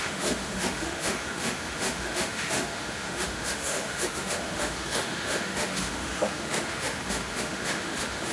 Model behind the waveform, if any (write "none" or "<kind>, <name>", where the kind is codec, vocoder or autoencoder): autoencoder, DAC-VAE